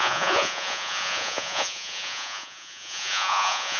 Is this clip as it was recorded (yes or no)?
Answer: no